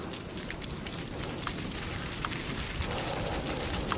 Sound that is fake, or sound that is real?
real